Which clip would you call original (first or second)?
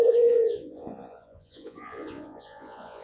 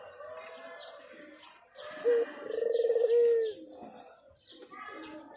second